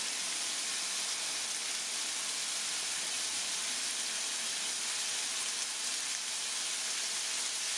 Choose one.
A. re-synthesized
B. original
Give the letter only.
B